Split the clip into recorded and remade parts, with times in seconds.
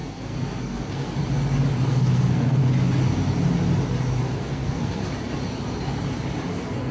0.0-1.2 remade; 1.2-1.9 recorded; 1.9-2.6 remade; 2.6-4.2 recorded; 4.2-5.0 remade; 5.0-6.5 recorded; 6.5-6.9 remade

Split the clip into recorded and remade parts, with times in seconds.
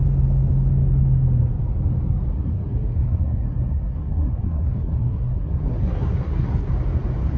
0.0-2.3 recorded; 2.3-6.7 remade; 6.7-7.4 recorded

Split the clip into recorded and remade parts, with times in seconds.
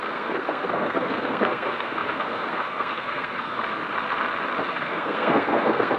0.0-3.6 remade; 3.6-4.7 recorded; 4.7-6.0 remade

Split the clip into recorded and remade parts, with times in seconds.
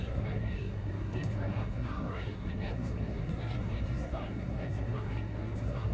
0.0-5.9 remade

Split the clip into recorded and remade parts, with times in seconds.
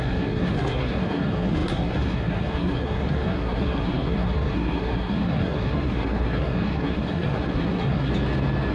0.0-8.1 remade; 8.1-8.7 recorded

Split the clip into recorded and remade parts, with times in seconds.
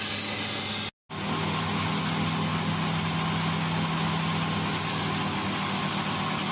0.0-6.5 recorded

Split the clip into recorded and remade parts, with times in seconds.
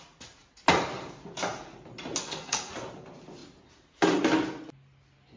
0.0-2.2 recorded; 2.2-2.7 remade; 2.7-5.4 recorded